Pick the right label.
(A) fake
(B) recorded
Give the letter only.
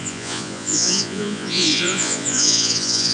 A